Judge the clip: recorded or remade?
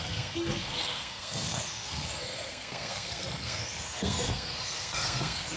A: remade